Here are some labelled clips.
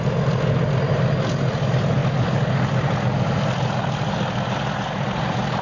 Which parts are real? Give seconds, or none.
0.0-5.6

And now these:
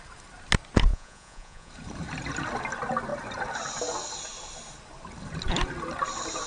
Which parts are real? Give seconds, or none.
0.0-0.9; 1.7-6.5

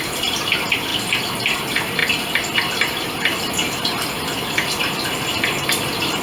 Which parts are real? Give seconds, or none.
0.9-1.6; 2.0-5.7

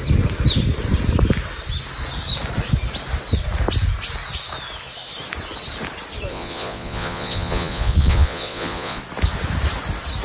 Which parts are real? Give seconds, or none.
0.0-6.3; 9.0-10.2

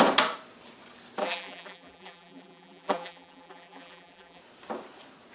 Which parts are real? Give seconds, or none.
0.0-1.2; 4.4-5.3